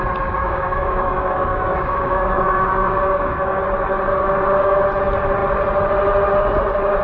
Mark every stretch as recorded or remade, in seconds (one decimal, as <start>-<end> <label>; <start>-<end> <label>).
0.0-0.4 recorded; 0.4-3.6 remade; 3.6-4.1 recorded; 4.1-4.8 remade; 4.8-7.0 recorded